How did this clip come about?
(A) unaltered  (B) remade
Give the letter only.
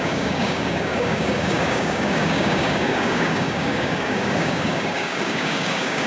B